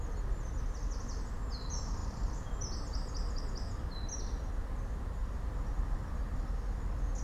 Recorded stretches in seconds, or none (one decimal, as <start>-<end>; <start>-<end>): 0.0-5.2; 6.2-7.2